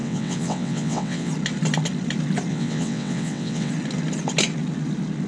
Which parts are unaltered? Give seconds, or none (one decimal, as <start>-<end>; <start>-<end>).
1.3-2.5; 3.7-5.3